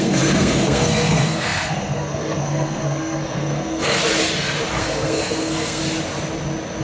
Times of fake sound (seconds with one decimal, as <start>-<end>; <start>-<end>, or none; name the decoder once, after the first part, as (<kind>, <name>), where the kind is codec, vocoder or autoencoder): 0.0-4.0 (codec, SNAC); 4.8-5.8